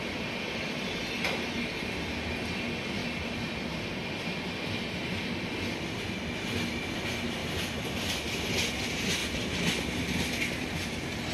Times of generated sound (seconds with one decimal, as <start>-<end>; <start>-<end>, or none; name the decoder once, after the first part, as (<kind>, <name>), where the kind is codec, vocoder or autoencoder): 3.0-5.0 (vocoder, BigVGAN v2); 7.4-8.1